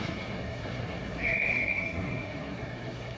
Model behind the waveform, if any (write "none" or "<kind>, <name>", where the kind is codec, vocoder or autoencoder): codec, SNAC